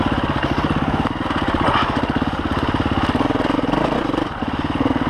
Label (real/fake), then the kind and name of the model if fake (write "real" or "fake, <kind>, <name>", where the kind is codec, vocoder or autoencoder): real